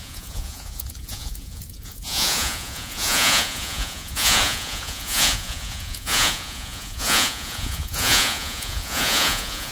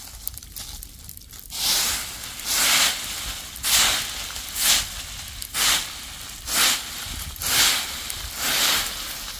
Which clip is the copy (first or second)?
first